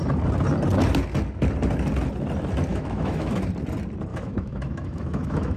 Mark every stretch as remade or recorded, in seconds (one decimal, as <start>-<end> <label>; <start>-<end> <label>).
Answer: 0.0-2.7 recorded; 2.7-3.4 remade; 3.4-4.1 recorded; 4.1-5.6 remade